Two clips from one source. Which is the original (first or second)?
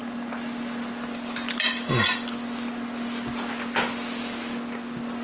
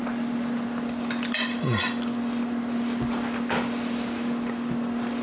first